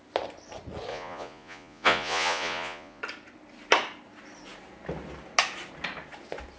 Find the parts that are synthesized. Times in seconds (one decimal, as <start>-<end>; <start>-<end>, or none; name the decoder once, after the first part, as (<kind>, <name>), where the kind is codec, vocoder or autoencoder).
0.9-3.0 (vocoder, Vocos)